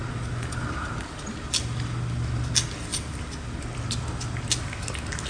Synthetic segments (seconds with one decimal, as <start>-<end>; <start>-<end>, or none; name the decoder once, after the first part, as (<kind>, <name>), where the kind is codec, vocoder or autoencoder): none